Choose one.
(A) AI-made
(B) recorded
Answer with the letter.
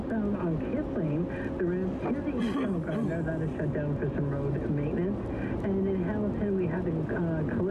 B